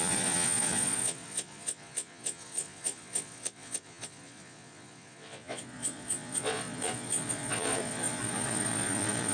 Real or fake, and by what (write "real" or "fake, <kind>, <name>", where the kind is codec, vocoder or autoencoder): fake, vocoder, Vocos